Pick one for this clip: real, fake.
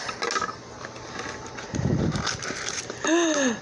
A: real